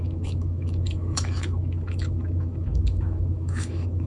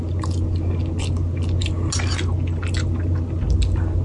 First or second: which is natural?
second